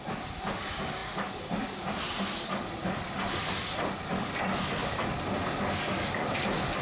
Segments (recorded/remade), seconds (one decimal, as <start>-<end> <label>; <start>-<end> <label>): 0.0-6.8 recorded